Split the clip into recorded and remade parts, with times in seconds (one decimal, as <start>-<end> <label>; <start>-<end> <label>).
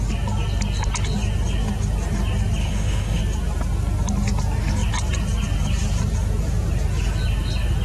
0.0-2.6 recorded; 2.6-3.2 remade; 3.2-7.8 recorded